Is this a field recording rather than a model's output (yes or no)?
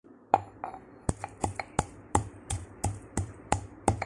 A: no